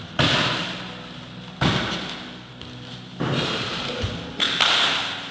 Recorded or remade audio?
recorded